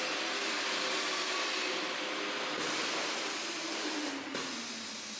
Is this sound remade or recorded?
recorded